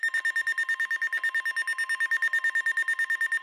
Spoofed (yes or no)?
no